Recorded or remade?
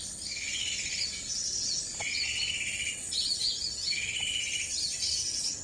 recorded